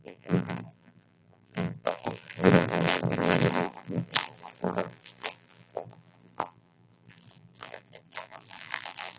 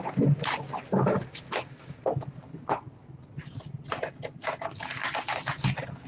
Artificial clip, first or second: first